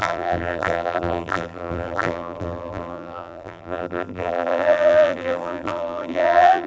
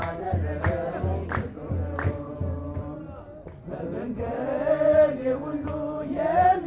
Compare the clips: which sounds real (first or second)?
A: second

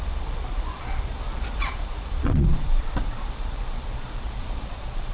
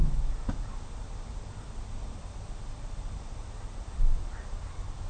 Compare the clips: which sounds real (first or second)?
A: second